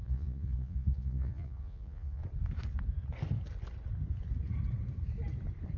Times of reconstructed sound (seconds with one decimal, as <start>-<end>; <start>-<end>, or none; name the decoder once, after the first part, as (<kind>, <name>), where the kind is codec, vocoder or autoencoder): 0.0-2.2 (vocoder, Vocos)